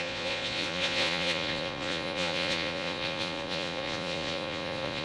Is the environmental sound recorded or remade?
remade